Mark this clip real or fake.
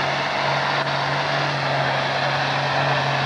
real